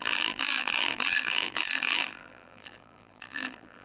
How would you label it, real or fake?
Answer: fake